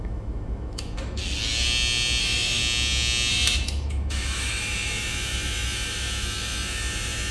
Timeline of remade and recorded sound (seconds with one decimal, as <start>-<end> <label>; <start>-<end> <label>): 0.0-1.2 remade; 1.2-2.2 recorded; 2.2-2.6 remade; 2.6-3.3 recorded; 3.3-7.3 remade